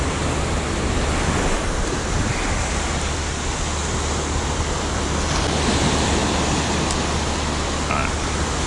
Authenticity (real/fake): real